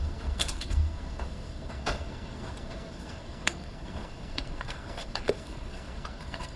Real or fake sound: fake